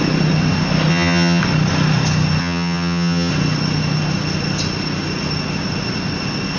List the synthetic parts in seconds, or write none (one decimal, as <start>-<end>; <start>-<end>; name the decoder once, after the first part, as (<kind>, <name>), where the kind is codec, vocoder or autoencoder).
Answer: 0.9-1.4 (vocoder, HiFi-GAN); 2.4-3.3